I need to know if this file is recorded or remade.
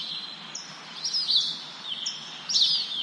recorded